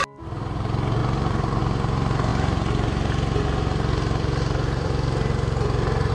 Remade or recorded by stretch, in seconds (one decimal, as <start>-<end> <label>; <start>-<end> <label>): 0.0-1.0 recorded; 1.0-1.6 remade; 1.6-2.3 recorded; 2.3-6.1 remade